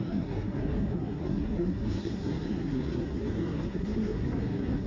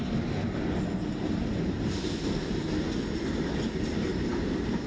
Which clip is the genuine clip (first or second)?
second